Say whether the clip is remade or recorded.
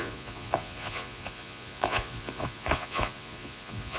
remade